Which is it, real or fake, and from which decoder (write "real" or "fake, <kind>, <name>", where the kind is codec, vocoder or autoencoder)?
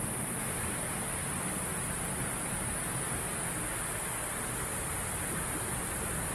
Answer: real